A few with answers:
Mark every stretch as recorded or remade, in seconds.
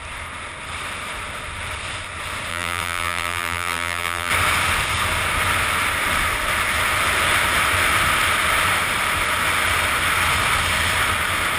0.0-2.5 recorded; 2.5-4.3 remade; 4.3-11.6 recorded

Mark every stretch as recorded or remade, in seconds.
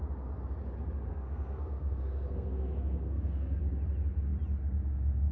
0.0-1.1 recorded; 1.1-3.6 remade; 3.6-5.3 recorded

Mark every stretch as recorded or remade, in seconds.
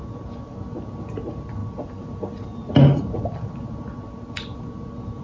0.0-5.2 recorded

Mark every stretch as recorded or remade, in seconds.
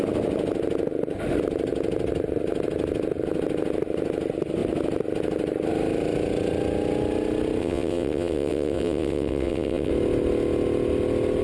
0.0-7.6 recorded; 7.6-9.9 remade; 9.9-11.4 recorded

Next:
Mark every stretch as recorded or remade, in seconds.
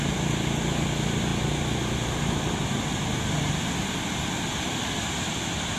0.0-5.8 recorded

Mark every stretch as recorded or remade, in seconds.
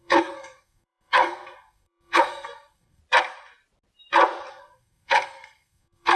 0.0-3.0 remade; 3.0-4.5 recorded; 4.5-6.2 remade